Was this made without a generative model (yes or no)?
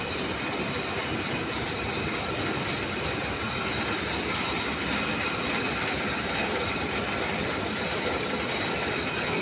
yes